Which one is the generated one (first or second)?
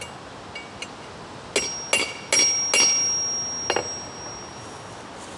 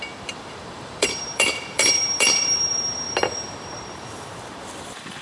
second